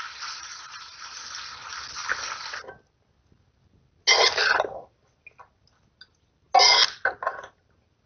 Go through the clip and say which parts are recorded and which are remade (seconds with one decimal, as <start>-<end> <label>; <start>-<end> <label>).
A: 0.0-8.1 recorded